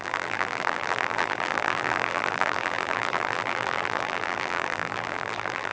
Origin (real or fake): fake